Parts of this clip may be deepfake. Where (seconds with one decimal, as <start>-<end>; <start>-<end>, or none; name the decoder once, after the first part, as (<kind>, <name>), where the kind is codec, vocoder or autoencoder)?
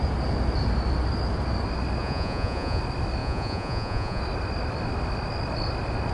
2.0-2.8 (vocoder, Vocos); 3.2-4.2